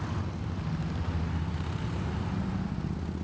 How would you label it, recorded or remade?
recorded